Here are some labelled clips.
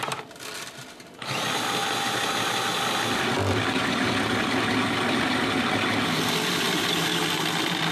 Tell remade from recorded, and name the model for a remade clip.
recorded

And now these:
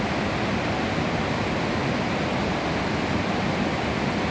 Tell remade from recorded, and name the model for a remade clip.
recorded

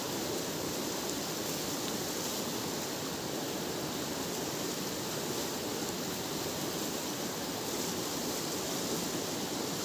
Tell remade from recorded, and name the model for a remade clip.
recorded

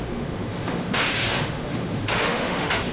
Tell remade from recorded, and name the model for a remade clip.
remade, autoencoder, DAC-VAE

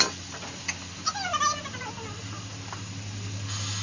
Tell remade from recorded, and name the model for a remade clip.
recorded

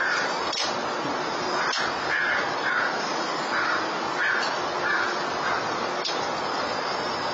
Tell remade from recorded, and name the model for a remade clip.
recorded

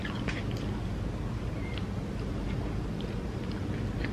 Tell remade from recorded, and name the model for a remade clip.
recorded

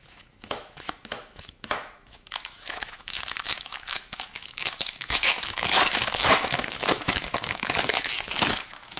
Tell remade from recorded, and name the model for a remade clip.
remade, autoencoder, DAC-VAE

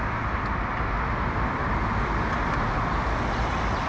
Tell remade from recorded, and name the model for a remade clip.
recorded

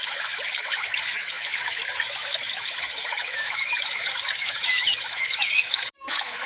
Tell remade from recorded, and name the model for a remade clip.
remade, autoencoder, DAC-VAE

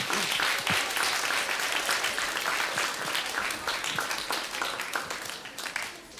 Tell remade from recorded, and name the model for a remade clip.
recorded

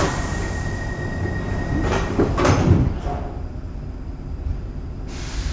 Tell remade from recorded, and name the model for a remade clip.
recorded